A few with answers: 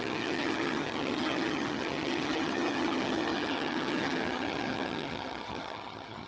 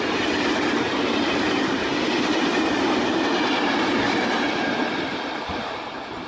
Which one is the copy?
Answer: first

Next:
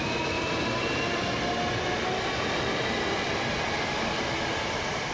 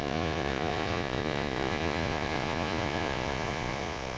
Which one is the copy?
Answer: second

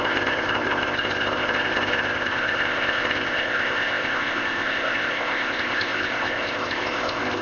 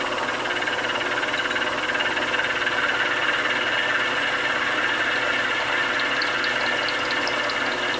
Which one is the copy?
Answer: first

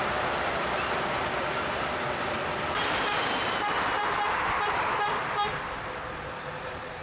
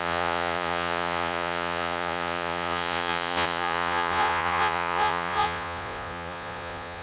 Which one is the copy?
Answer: second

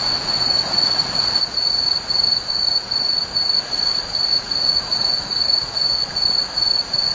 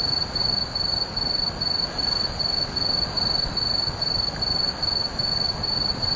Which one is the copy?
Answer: first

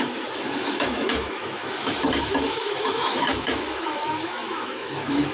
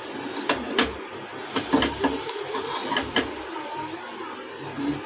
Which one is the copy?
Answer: first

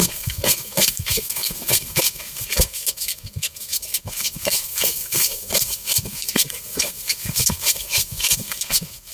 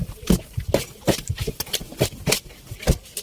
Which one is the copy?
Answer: first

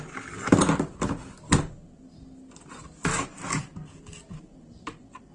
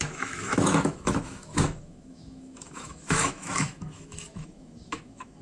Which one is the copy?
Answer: second